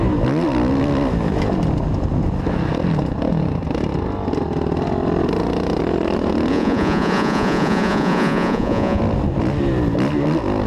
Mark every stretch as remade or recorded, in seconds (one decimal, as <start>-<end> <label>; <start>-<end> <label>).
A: 0.0-6.5 recorded; 6.5-9.0 remade; 9.0-10.7 recorded